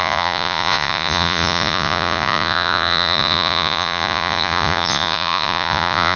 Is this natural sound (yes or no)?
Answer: no